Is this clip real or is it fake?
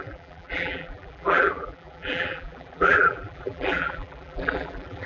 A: fake